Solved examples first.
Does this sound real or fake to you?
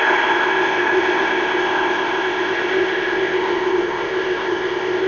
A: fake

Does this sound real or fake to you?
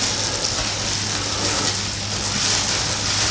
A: real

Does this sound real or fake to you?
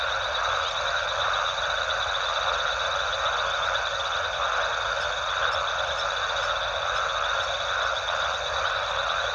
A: real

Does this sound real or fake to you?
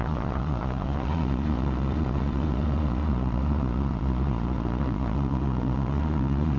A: fake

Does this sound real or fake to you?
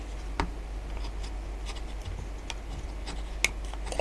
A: real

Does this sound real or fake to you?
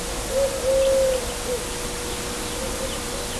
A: real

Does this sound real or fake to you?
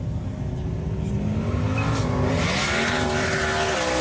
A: real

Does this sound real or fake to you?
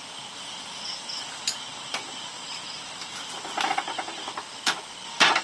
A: real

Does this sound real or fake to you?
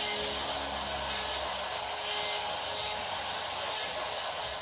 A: real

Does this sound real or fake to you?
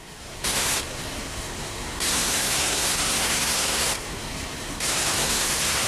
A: fake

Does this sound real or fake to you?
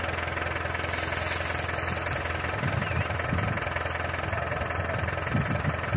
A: real